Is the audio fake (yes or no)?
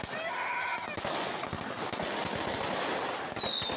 no